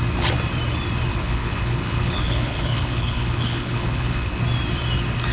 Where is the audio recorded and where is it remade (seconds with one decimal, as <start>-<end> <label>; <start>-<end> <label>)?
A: 0.0-1.2 recorded; 1.2-4.4 remade; 4.4-5.3 recorded